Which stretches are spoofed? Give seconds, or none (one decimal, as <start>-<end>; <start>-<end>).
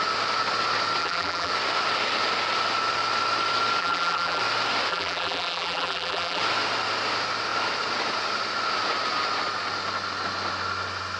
1.0-1.5; 3.8-4.4; 4.9-6.4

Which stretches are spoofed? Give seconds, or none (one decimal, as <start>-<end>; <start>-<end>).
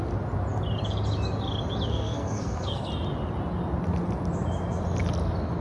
1.9-2.9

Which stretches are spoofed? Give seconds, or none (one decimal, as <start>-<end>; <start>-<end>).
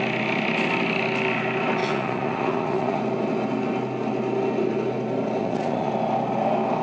1.8-3.0; 5.4-5.9